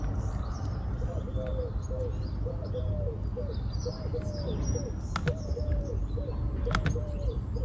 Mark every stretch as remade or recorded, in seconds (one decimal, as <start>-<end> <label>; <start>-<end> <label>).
0.0-5.2 recorded; 5.2-6.3 remade; 6.3-7.6 recorded